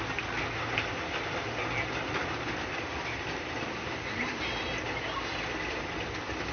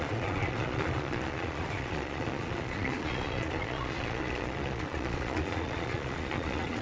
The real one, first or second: first